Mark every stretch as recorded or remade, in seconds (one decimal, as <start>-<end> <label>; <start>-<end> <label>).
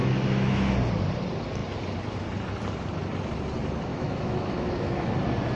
0.0-0.7 remade; 0.7-3.9 recorded; 3.9-5.1 remade; 5.1-5.6 recorded